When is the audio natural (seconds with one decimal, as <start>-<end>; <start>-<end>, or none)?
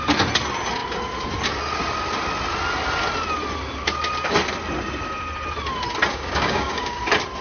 0.0-6.1; 7.0-7.4